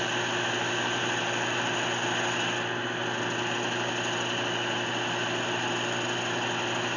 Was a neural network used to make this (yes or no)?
no